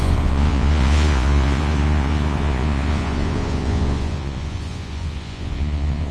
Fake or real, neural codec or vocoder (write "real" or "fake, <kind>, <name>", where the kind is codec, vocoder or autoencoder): fake, vocoder, Vocos